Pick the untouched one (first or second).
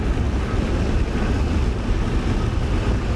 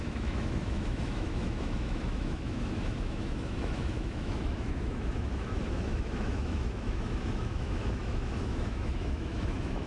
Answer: first